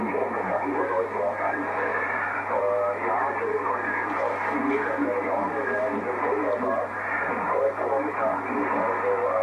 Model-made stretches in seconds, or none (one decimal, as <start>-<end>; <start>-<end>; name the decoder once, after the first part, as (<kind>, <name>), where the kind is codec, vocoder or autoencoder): 1.9-2.6 (vocoder, BigVGAN v2); 6.9-8.7